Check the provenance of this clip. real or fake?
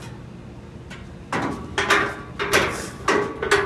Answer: real